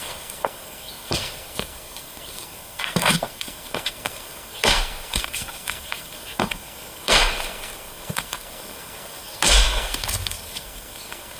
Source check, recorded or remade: remade